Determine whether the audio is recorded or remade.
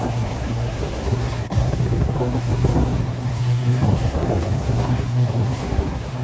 remade